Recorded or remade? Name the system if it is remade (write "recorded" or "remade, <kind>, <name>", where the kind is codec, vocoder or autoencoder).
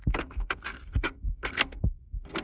remade, codec, SNAC